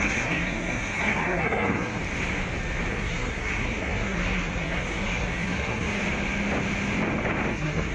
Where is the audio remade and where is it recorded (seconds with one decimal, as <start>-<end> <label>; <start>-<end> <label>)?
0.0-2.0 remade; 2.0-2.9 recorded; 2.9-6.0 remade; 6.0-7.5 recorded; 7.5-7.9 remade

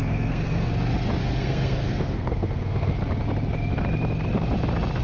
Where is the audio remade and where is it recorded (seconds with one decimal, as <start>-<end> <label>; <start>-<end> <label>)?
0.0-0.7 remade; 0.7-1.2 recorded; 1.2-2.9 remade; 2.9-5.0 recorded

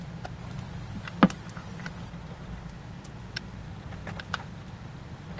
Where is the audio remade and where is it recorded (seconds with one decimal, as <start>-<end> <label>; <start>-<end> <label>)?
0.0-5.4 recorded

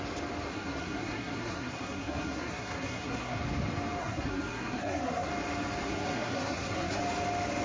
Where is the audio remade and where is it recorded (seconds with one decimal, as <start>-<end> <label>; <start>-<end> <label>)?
0.0-0.5 recorded; 0.5-3.4 remade; 3.4-4.0 recorded; 4.0-5.3 remade; 5.3-5.9 recorded; 5.9-7.0 remade; 7.0-7.6 recorded